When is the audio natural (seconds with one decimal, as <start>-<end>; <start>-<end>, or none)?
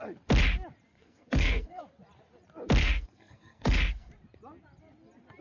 0.0-0.9; 1.8-2.8; 4.1-5.4